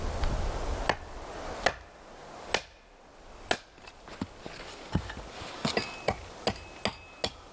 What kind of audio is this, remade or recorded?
recorded